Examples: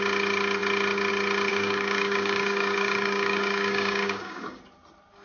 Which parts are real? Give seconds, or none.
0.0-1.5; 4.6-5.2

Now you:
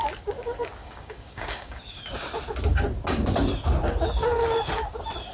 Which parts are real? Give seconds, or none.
0.0-0.8; 2.0-5.3

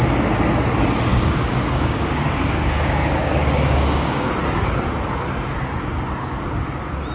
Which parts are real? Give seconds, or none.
0.0-1.1; 4.3-7.1

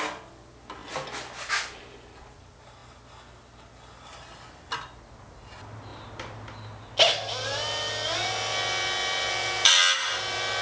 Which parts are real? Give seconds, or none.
0.0-10.6

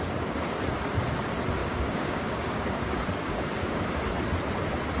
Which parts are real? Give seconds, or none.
0.0-1.6; 3.8-5.0

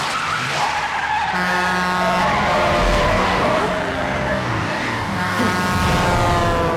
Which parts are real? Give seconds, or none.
0.0-3.1; 3.6-4.3; 5.4-6.8

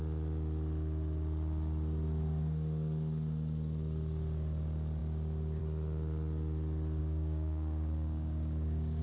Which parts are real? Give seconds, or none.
0.0-7.0

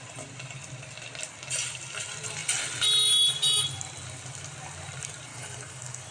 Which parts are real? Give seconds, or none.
0.0-5.3